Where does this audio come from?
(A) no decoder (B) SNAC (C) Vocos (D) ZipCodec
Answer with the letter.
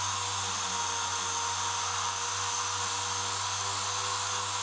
A